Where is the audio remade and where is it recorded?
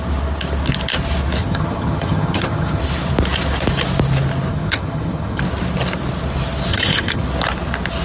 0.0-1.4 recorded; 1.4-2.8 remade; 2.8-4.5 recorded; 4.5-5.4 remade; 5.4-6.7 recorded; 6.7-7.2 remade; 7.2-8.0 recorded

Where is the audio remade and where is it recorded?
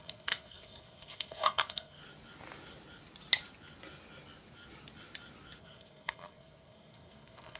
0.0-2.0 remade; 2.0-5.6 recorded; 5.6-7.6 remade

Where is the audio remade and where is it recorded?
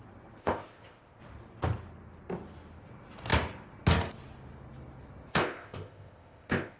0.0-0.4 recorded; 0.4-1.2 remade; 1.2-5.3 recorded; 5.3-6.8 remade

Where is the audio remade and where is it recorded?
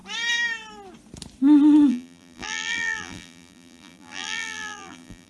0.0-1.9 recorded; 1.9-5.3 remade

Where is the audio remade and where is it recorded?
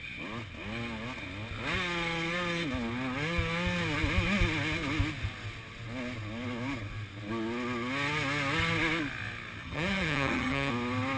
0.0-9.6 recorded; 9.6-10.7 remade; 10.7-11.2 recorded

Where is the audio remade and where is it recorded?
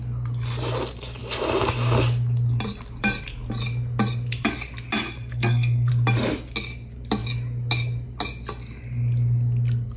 0.0-5.3 recorded; 5.3-5.9 remade; 5.9-10.0 recorded